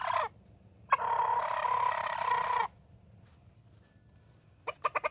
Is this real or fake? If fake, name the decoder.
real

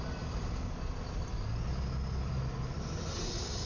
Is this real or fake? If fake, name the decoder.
real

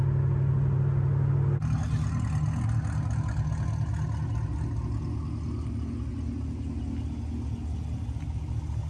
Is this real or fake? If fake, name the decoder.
real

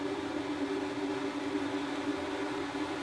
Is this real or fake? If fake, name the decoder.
real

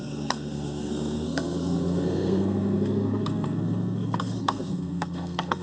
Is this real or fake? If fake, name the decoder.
fake, codec, SNAC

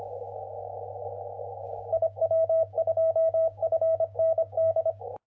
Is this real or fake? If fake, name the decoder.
fake, codec, DAC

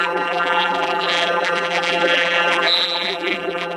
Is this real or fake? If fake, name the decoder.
fake, vocoder, BigVGAN v2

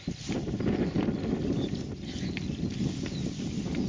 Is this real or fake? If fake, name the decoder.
real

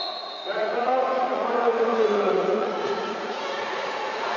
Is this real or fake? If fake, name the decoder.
fake, vocoder, Vocos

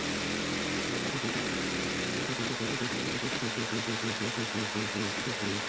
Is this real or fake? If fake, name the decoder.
real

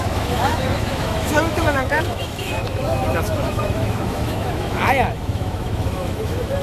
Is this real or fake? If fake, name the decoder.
fake, autoencoder, DAC-VAE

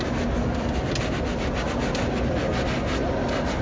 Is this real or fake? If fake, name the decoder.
real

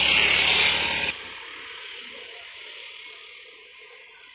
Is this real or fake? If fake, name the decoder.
real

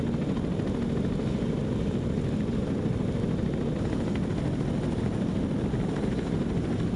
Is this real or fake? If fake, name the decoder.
real